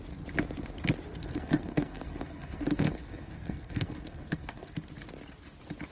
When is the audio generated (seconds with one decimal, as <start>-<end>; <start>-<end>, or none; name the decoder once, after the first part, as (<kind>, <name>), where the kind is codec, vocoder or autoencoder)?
1.2-4.7 (codec, SNAC)